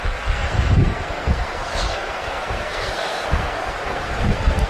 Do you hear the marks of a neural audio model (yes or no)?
yes